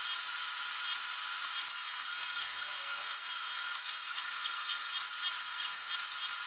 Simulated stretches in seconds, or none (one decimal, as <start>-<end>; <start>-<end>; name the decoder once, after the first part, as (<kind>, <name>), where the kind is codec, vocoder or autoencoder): 1.7-4.9 (codec, SNAC); 5.4-5.9